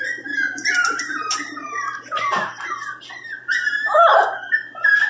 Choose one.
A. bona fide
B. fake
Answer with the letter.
B